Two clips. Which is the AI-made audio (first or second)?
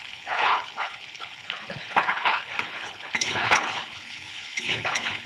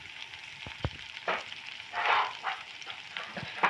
first